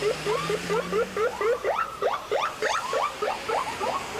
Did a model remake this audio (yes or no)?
yes